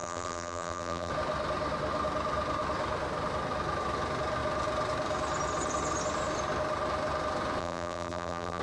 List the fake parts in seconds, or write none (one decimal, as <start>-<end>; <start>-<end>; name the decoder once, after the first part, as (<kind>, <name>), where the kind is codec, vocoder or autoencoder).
0.0-1.1 (vocoder, BigVGAN v2); 7.6-8.6